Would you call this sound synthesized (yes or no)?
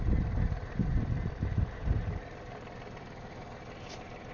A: no